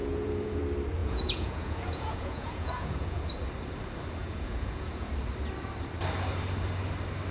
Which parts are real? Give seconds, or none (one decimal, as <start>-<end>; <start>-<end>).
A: 0.6-1.0; 3.2-4.2; 5.1-7.3